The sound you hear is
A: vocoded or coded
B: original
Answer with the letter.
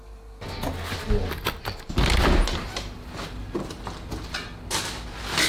B